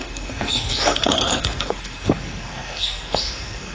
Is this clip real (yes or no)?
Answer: no